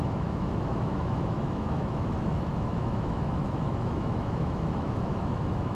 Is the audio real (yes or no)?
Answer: no